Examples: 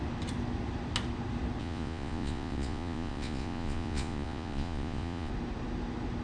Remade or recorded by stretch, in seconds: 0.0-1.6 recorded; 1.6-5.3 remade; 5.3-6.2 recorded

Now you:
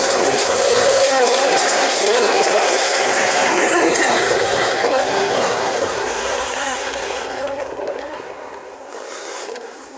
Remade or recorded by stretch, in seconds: 0.0-10.0 remade

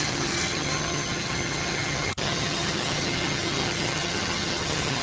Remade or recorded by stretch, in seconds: 0.0-5.0 remade